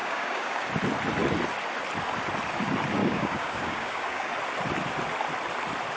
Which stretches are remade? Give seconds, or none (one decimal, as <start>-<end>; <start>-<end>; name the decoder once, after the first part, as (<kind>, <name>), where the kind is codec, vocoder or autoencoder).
0.0-0.7 (codec, DAC); 3.0-4.3